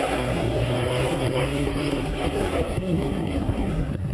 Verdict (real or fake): fake